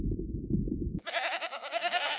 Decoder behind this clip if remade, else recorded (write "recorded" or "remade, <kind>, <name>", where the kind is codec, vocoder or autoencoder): remade, codec, DAC